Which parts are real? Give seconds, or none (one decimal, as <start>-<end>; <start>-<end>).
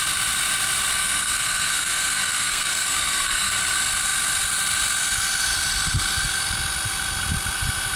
0.0-1.0; 3.5-8.0